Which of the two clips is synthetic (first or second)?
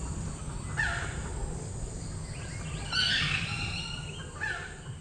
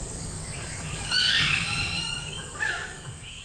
second